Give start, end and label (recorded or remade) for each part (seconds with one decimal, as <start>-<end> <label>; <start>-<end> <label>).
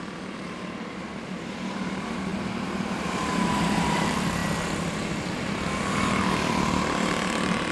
0.0-4.4 remade; 4.4-6.3 recorded; 6.3-7.7 remade